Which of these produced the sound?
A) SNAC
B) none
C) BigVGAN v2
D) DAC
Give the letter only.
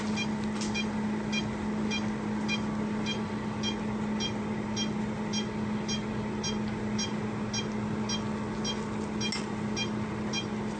B